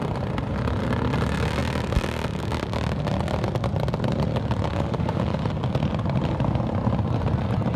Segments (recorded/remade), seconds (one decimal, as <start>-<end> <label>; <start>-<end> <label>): 0.0-4.7 recorded; 4.7-5.5 remade; 5.5-7.8 recorded